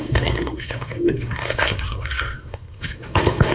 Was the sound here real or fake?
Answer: fake